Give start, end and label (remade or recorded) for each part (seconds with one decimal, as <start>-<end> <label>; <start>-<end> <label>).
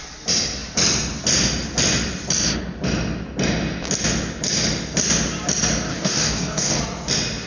0.0-5.9 recorded; 5.9-6.8 remade; 6.8-7.5 recorded